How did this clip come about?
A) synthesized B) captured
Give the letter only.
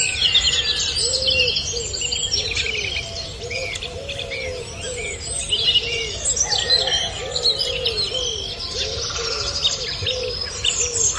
B